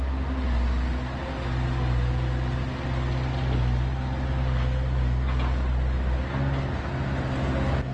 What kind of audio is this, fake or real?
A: real